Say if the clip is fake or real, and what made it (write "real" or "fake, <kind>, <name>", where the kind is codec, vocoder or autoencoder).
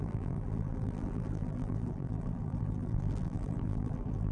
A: fake, vocoder, BigVGAN v2